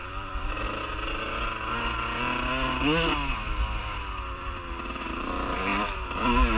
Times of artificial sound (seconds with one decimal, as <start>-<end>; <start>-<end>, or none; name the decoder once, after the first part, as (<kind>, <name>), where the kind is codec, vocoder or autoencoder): 0.0-0.6 (vocoder, BigVGAN v2); 3.8-4.6; 5.7-6.6